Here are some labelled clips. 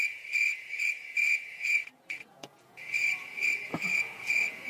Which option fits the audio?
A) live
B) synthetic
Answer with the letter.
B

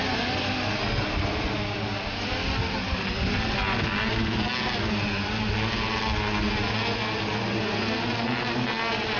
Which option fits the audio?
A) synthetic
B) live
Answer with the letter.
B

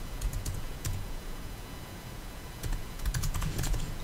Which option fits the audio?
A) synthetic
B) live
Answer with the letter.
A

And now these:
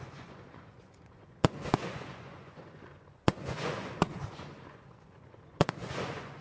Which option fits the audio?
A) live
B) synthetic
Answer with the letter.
B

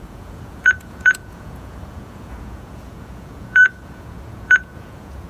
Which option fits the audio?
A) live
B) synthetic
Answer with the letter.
B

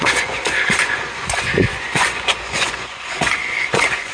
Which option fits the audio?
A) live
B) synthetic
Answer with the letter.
B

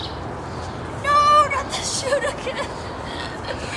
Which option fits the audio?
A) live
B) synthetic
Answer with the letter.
A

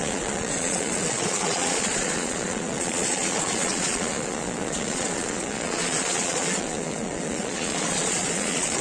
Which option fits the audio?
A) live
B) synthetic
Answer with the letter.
B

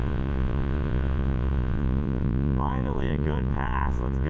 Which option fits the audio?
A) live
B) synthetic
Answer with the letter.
B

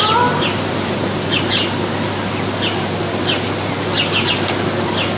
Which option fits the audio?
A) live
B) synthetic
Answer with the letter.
A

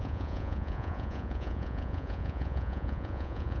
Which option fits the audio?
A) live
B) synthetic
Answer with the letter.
B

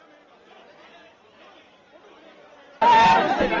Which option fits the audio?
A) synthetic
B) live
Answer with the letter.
B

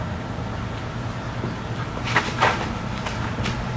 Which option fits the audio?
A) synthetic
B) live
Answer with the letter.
B